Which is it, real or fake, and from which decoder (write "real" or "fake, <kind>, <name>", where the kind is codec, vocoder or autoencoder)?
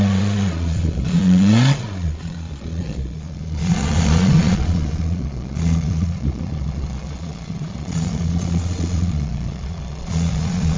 fake, vocoder, Vocos